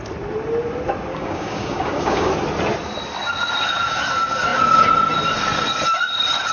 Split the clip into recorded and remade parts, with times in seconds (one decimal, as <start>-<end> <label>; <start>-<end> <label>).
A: 0.0-1.1 recorded; 1.1-2.3 remade; 2.3-6.5 recorded